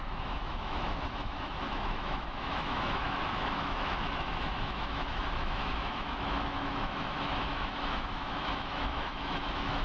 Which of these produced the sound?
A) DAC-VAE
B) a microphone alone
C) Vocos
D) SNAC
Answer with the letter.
A